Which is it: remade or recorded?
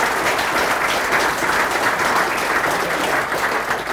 recorded